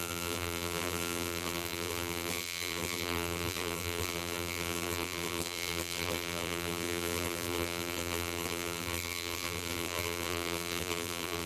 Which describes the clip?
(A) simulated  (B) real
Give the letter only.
A